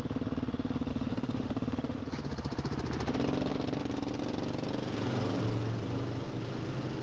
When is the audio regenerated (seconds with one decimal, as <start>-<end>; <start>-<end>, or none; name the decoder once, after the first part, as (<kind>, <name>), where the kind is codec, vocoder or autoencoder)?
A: 0.9-2.0 (autoencoder, DAC-VAE)